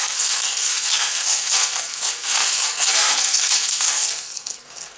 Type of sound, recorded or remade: remade